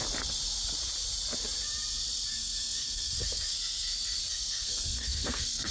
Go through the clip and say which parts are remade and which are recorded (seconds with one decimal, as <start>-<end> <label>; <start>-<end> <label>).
0.0-2.3 recorded; 2.3-5.7 remade